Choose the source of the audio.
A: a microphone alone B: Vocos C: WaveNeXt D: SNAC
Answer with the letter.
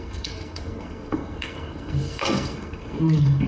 D